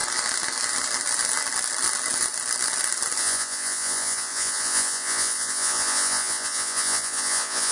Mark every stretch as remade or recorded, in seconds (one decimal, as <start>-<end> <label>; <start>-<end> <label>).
0.0-3.2 recorded; 3.2-7.7 remade